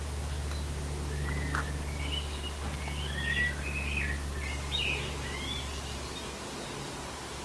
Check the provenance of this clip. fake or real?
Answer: real